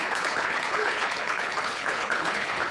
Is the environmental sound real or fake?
fake